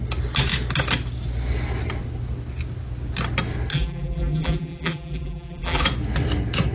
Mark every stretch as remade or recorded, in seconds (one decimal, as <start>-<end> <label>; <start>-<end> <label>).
0.0-3.7 recorded; 3.7-5.8 remade; 5.8-6.7 recorded